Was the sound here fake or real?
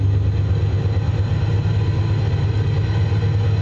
real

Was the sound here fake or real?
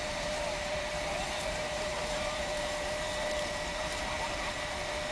fake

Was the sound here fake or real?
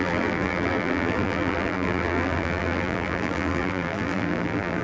fake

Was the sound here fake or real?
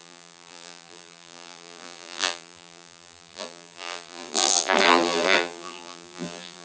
fake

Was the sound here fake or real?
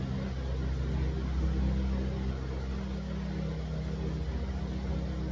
real